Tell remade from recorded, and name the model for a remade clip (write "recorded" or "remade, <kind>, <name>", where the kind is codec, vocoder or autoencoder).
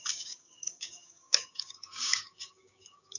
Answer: remade, codec, DAC